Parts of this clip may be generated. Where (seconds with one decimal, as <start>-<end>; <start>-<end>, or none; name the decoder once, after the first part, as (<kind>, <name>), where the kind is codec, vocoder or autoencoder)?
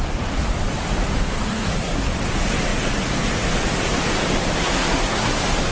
1.4-2.1 (codec, SNAC); 4.6-5.3